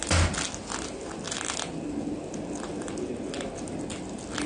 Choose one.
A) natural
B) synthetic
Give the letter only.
A